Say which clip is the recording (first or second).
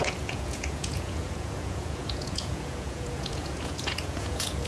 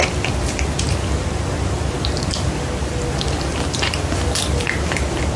second